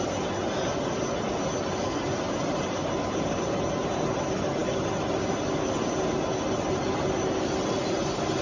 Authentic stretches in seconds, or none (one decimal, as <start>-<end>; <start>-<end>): 0.0-8.4